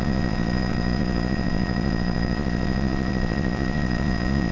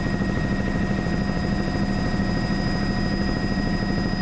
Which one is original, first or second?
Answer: second